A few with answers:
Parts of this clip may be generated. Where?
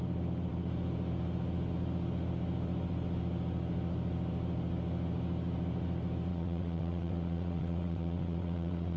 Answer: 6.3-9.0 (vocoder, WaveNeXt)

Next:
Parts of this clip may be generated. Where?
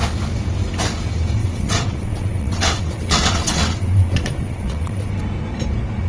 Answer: 1.4-5.1 (vocoder, WaveNeXt)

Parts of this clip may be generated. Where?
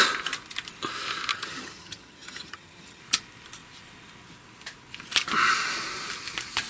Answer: 1.3-3.0 (vocoder, HiFi-GAN)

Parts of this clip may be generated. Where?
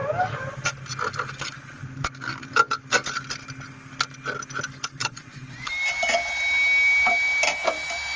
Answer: 5.0-5.7 (vocoder, Vocos)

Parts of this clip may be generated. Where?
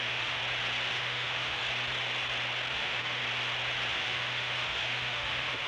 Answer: 0.0-0.4 (autoencoder, DAC-VAE); 0.9-1.6; 2.7-3.2; 3.9-5.7